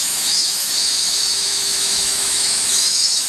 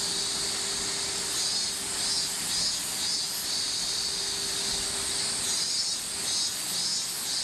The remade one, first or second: first